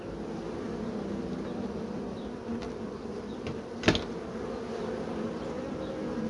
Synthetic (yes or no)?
no